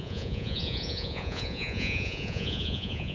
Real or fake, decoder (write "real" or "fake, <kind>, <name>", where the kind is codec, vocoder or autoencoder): fake, vocoder, Vocos